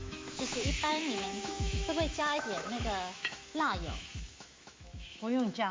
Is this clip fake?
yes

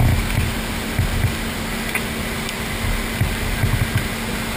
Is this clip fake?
no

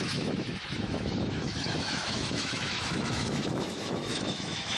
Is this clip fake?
yes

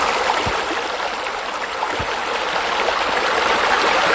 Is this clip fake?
no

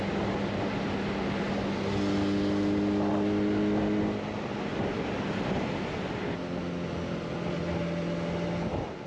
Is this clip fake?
no